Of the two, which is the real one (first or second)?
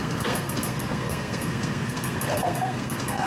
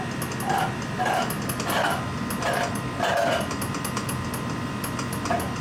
second